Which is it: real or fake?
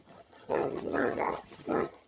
fake